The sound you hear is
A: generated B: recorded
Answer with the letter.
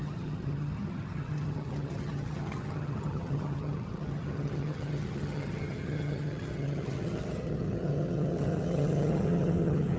A